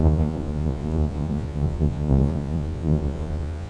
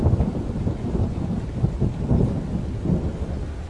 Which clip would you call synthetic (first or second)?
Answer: first